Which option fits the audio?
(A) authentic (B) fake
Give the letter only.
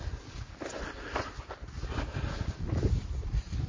A